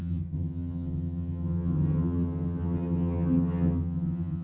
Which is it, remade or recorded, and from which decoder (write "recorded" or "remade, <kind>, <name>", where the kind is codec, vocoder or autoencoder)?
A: remade, vocoder, HiFi-GAN